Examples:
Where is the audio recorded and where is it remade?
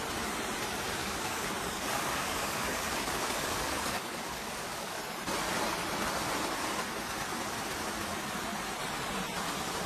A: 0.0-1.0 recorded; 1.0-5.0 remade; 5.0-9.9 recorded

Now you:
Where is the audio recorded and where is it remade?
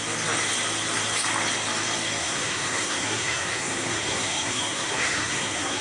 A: 0.0-2.2 recorded; 2.2-5.8 remade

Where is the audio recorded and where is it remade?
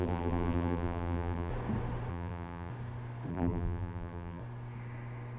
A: 0.0-1.5 remade; 1.5-2.1 recorded; 2.1-2.7 remade; 2.7-3.3 recorded; 3.3-4.4 remade; 4.4-5.4 recorded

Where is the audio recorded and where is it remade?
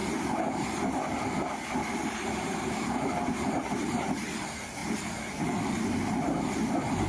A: 0.0-4.3 remade; 4.3-4.8 recorded; 4.8-5.4 remade; 5.4-7.1 recorded